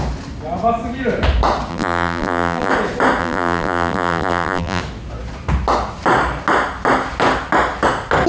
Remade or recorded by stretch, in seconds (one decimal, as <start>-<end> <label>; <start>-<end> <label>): 0.0-1.7 recorded; 1.7-2.7 remade; 2.7-3.2 recorded; 3.2-4.8 remade; 4.8-8.3 recorded